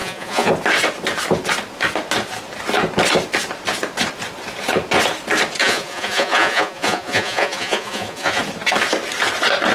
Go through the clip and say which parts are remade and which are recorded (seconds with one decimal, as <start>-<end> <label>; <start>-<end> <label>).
0.0-0.5 remade; 0.5-5.6 recorded; 5.6-8.4 remade; 8.4-9.7 recorded